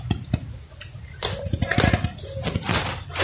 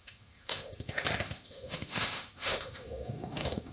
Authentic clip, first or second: first